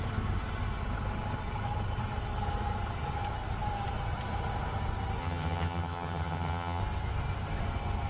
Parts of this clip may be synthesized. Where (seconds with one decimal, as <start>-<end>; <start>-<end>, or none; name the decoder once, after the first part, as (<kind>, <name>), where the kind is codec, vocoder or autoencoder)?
5.2-6.8 (vocoder, HiFi-GAN)